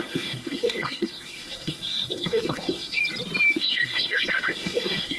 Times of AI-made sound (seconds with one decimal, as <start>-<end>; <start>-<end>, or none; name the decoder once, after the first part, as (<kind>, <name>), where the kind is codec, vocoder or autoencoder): 0.0-3.0 (codec, SNAC); 3.6-5.2